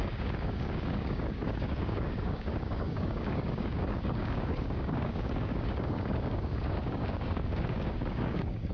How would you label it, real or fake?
fake